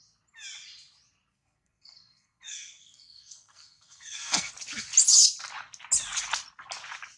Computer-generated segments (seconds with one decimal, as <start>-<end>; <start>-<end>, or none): 1.3-4.5